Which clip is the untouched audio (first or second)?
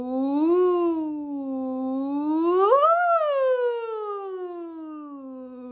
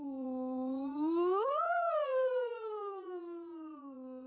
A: first